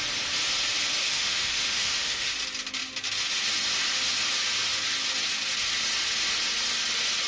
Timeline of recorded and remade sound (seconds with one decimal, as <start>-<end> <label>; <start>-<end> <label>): 0.0-1.0 recorded; 1.0-2.3 remade; 2.3-7.3 recorded